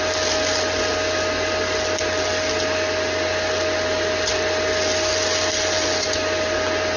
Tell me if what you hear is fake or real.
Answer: real